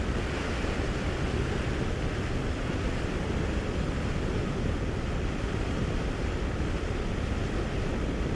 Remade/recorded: recorded